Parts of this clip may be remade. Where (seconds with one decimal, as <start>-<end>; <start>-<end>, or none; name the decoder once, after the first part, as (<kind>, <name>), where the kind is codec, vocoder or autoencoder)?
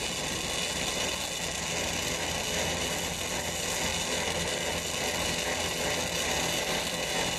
none